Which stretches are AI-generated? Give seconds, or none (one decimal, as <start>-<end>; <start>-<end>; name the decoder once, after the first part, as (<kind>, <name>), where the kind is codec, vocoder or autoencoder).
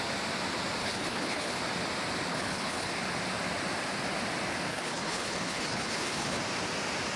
0.8-1.6 (codec, HILCodec); 2.3-2.9; 4.7-6.4